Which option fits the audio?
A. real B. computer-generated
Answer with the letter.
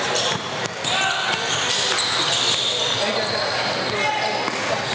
A